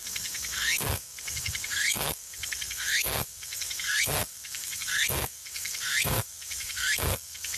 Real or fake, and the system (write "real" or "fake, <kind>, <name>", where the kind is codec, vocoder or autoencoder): fake, codec, SNAC